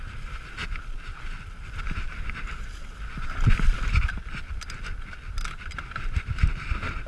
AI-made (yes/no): no